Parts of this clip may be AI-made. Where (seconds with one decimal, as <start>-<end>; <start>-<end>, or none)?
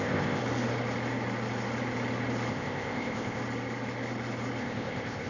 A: 0.0-0.4; 2.5-3.4; 4.6-5.3